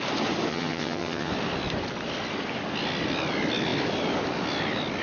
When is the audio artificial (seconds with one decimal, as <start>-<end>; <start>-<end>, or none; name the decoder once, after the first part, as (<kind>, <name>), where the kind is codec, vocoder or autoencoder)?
0.5-1.3 (vocoder, HiFi-GAN)